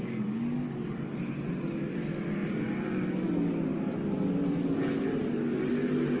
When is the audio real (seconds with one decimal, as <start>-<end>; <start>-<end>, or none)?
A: 0.0-6.2